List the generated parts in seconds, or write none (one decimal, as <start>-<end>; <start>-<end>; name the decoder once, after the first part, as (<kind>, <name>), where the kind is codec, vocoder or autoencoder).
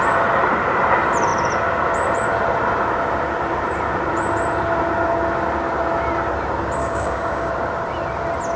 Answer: 6.8-7.5 (codec, DAC)